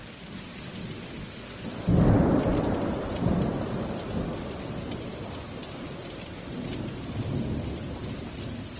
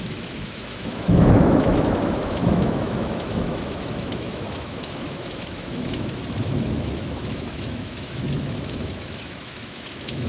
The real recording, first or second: first